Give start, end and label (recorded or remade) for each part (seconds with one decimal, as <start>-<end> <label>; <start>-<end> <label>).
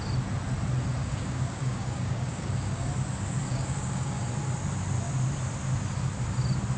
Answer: 0.0-1.0 recorded; 1.0-2.9 remade; 2.9-3.5 recorded; 3.5-4.2 remade; 4.2-6.8 recorded